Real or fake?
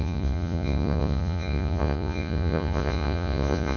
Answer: fake